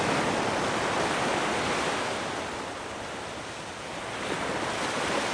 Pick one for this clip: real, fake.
real